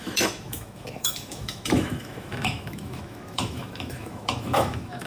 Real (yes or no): no